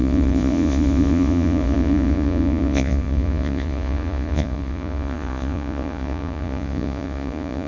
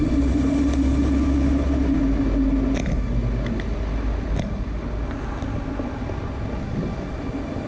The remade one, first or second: first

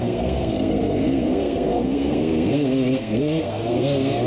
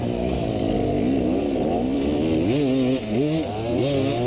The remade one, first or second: first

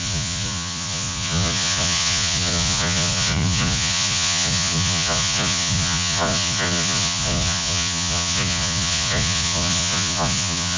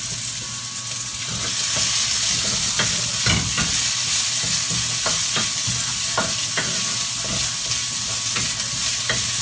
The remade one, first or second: first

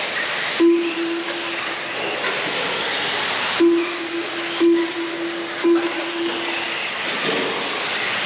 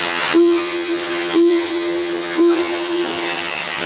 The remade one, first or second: second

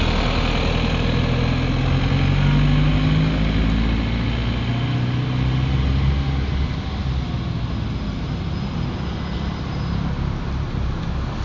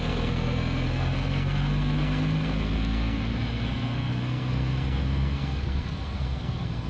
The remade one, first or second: second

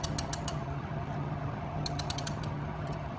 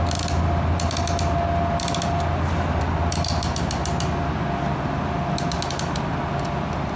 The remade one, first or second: first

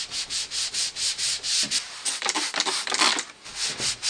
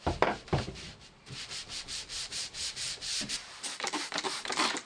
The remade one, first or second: second